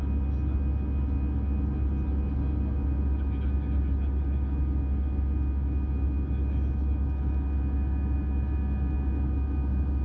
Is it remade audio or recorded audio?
recorded